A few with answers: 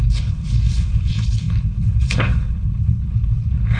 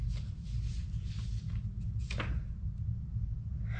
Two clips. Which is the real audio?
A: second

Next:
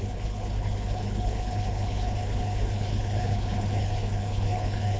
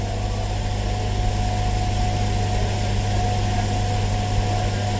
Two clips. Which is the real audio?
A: second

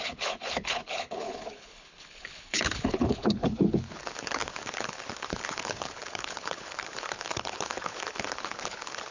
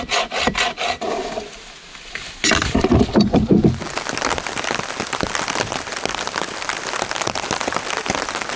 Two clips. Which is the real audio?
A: second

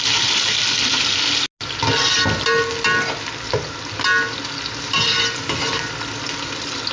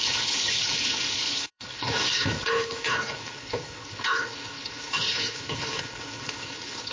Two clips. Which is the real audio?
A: first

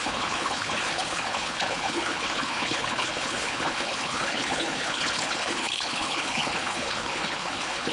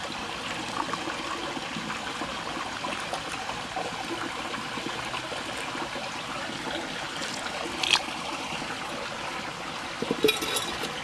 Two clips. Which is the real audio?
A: second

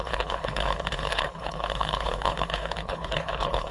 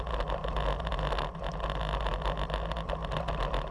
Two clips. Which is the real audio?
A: second